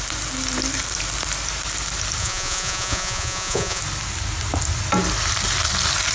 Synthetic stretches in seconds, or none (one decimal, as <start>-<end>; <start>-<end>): 2.2-3.8